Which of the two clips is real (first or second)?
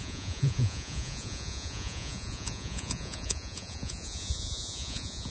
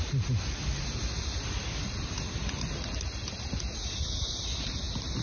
second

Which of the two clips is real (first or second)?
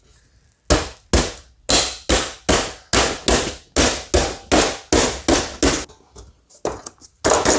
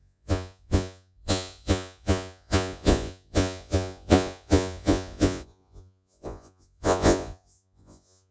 first